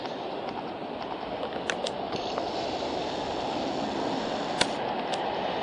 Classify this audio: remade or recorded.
recorded